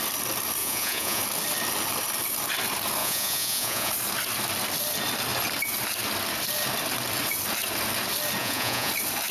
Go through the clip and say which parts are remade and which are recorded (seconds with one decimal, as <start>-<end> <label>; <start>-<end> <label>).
0.0-0.6 recorded; 0.6-1.2 remade; 1.2-3.0 recorded; 3.0-3.9 remade; 3.9-8.4 recorded; 8.4-8.9 remade; 8.9-9.3 recorded